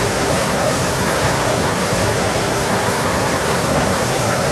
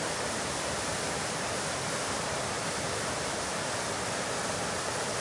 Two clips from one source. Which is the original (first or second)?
second